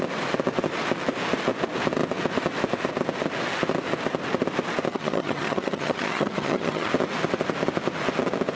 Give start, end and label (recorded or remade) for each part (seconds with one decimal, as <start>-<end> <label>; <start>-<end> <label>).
0.0-4.9 recorded; 4.9-6.9 remade; 6.9-8.6 recorded